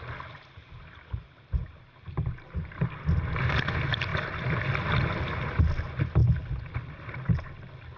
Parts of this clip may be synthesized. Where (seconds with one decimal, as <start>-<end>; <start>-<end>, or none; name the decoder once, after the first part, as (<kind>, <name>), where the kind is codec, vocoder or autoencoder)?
4.1-5.4 (vocoder, BigVGAN v2)